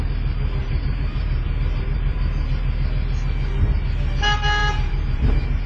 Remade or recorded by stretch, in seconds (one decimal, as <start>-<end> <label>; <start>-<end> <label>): 0.0-0.6 recorded; 0.6-2.5 remade; 2.5-4.6 recorded; 4.6-5.3 remade; 5.3-5.7 recorded